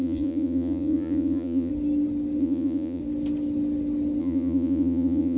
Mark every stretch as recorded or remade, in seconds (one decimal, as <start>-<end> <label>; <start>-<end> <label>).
0.0-1.7 remade; 1.7-2.4 recorded; 2.4-3.0 remade; 3.0-4.2 recorded; 4.2-5.4 remade